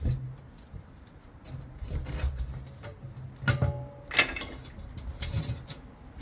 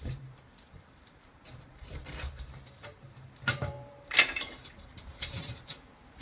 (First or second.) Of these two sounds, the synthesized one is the second